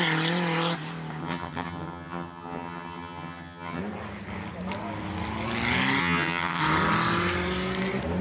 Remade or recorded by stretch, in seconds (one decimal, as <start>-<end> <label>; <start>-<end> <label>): 0.0-1.2 recorded; 1.2-3.8 remade; 3.8-6.0 recorded; 6.0-6.6 remade; 6.6-8.2 recorded